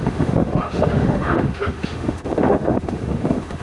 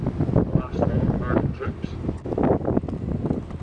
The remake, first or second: first